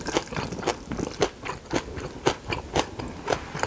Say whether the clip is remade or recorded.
recorded